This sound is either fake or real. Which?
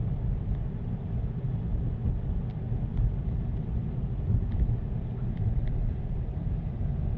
real